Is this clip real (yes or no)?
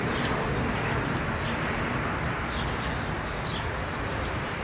yes